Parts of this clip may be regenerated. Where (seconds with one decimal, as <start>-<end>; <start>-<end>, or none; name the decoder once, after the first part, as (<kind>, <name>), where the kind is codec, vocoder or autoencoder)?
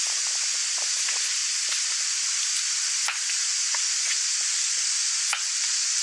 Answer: none